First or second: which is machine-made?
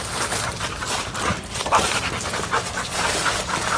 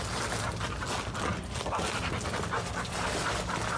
first